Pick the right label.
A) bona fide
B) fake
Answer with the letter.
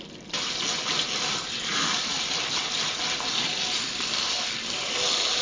A